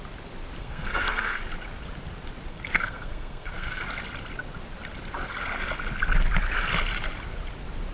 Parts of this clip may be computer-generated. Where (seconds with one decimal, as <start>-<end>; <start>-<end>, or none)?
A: 0.6-1.4; 2.5-3.8